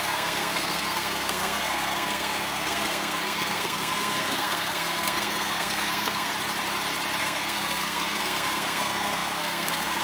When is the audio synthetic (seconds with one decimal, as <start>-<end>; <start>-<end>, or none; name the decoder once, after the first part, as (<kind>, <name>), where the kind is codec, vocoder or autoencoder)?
0.0-6.3 (codec, SNAC); 7.2-10.0